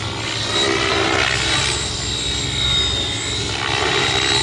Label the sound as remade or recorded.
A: recorded